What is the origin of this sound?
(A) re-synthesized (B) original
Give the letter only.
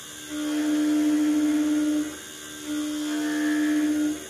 B